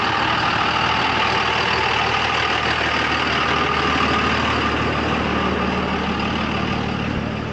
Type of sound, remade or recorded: recorded